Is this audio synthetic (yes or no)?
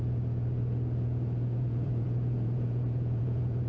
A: yes